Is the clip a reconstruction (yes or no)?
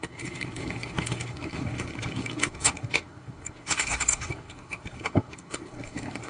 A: yes